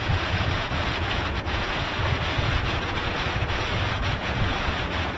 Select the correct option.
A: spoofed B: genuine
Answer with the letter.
A